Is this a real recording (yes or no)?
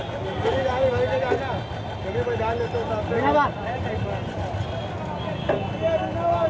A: yes